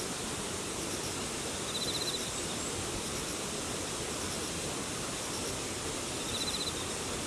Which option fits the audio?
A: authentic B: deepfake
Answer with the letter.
A